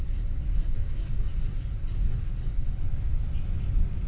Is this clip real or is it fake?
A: real